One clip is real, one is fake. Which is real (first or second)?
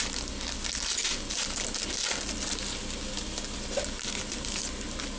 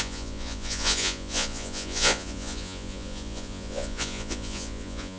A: first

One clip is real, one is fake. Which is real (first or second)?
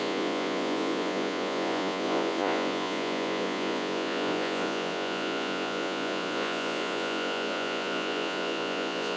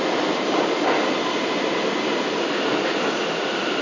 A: second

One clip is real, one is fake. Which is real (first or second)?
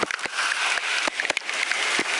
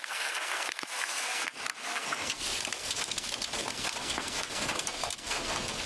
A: first